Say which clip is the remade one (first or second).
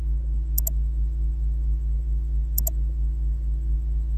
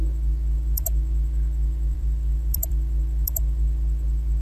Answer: second